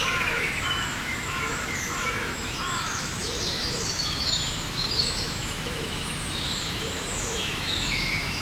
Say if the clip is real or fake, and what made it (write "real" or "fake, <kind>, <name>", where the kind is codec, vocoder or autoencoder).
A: fake, autoencoder, DAC-VAE